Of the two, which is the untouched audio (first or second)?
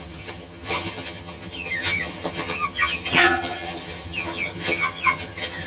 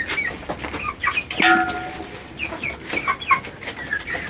second